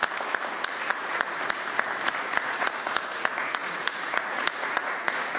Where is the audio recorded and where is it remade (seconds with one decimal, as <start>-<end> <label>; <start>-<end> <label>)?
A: 0.0-0.8 recorded; 0.8-1.4 remade; 1.4-2.2 recorded; 2.2-5.4 remade